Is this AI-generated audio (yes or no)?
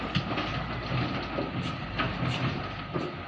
no